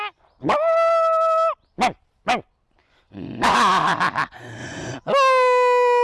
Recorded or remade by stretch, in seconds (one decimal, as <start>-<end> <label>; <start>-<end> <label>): 0.0-2.8 recorded; 2.8-3.9 remade; 3.9-4.6 recorded; 4.6-5.1 remade; 5.1-6.0 recorded